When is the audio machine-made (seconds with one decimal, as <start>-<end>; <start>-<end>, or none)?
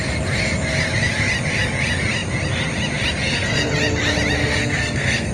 3.2-3.7; 4.4-5.3